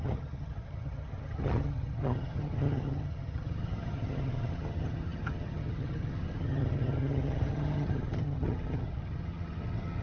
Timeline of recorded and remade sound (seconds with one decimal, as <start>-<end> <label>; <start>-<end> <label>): 0.0-10.0 remade